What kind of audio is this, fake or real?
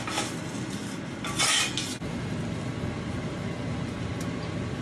real